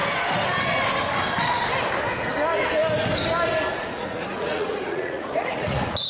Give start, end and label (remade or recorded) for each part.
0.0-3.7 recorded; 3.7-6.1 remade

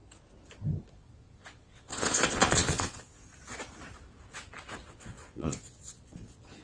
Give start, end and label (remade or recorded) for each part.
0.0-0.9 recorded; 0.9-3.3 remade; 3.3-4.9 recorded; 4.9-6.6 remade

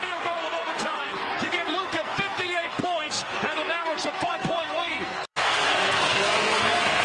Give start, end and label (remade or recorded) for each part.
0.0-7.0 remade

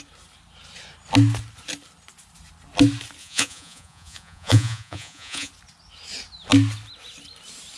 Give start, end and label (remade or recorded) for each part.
0.0-3.2 recorded; 3.2-5.5 remade; 5.5-7.8 recorded

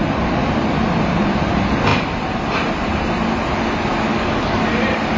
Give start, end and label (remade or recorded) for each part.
0.0-4.1 recorded; 4.1-4.6 remade; 4.6-5.2 recorded

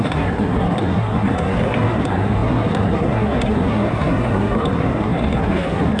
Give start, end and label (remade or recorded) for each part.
0.0-6.0 remade